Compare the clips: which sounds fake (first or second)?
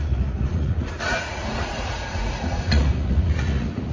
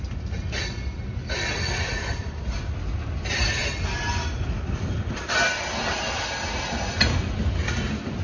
first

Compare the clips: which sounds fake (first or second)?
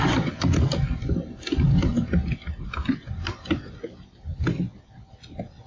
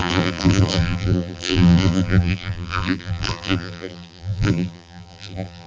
second